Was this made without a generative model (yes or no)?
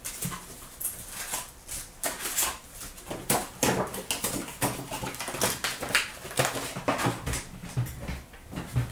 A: yes